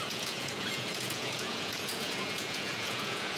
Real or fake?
fake